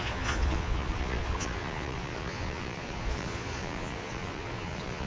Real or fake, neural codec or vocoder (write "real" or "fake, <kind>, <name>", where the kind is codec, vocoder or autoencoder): fake, vocoder, Vocos